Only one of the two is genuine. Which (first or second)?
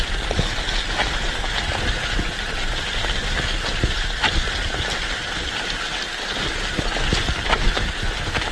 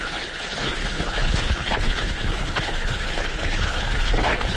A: first